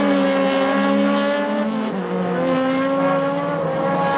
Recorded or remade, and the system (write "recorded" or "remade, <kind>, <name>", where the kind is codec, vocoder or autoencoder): recorded